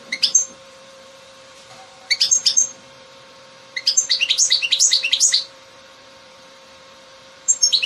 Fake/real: fake